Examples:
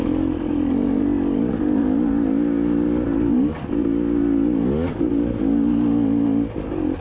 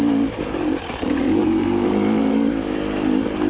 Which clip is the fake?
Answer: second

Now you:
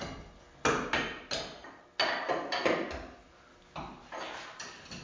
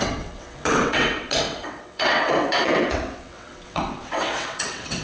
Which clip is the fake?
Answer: second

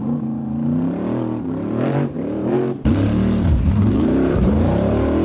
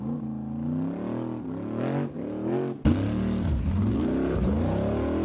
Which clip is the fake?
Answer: first